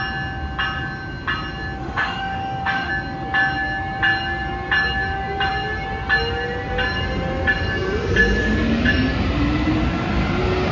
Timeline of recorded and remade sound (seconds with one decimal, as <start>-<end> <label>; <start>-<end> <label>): 0.0-1.8 recorded; 1.8-2.9 remade; 2.9-10.7 recorded